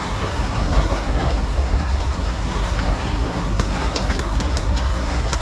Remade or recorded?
remade